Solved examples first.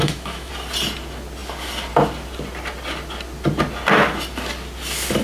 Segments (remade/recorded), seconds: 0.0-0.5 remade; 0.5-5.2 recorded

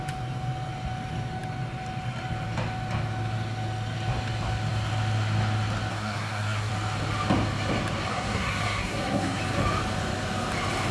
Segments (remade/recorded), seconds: 0.0-5.9 recorded; 5.9-6.7 remade; 6.7-8.1 recorded; 8.1-9.4 remade; 9.4-10.9 recorded

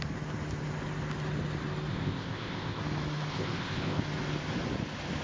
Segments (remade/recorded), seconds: 0.0-1.9 recorded; 1.9-2.8 remade; 2.8-3.3 recorded; 3.3-4.0 remade; 4.0-5.2 recorded